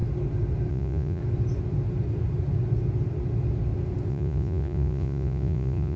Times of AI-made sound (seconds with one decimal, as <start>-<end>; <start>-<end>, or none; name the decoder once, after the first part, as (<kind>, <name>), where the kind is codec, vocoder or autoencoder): 0.7-1.2 (vocoder, Vocos); 4.1-6.0